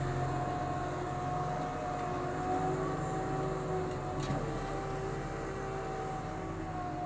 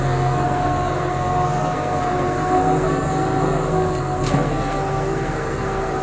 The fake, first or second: second